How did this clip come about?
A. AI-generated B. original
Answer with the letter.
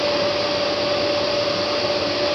B